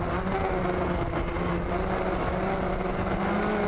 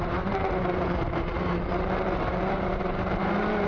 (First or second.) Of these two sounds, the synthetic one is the second